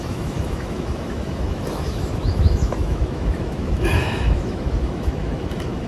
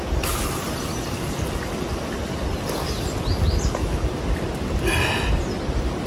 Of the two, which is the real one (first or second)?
second